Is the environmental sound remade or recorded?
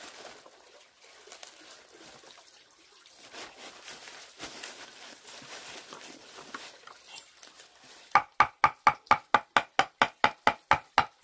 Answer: recorded